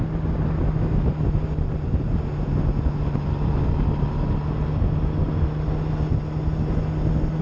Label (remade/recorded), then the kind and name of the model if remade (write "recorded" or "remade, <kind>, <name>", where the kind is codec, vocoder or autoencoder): recorded